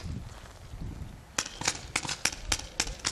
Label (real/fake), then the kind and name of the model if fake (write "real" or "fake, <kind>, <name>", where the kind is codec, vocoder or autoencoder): real